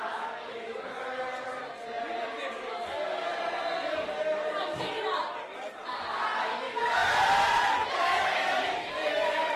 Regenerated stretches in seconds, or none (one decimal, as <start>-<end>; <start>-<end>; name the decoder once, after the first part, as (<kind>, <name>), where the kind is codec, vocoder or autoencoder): 0.0-1.6 (codec, DAC); 2.7-3.3; 6.4-7.0; 7.9-9.6